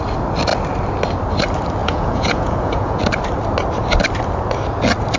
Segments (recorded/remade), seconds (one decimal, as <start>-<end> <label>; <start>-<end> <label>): 0.0-1.8 recorded; 1.8-3.0 remade; 3.0-5.2 recorded